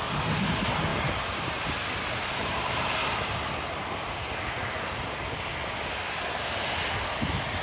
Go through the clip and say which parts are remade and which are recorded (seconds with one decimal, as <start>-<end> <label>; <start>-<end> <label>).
0.0-0.9 recorded; 0.9-1.7 remade; 1.7-2.4 recorded; 2.4-3.3 remade; 3.3-7.6 recorded